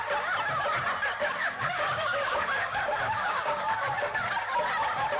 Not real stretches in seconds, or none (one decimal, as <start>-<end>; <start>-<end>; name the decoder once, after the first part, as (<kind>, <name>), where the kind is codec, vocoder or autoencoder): 1.2-4.3 (codec, DAC)